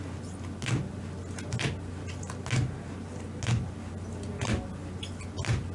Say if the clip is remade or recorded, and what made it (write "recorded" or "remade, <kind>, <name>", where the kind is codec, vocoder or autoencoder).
recorded